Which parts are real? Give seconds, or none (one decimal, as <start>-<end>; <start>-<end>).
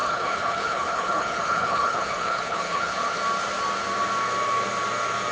3.2-5.3